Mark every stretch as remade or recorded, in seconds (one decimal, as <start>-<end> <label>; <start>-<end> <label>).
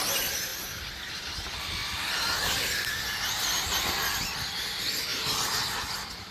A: 0.0-1.8 recorded; 1.8-2.7 remade; 2.7-6.3 recorded